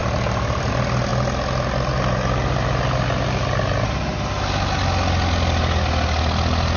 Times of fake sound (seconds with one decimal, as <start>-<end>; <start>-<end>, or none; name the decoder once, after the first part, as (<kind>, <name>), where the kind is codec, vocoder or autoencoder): 0.0-0.7 (vocoder, BigVGAN v2); 1.1-3.0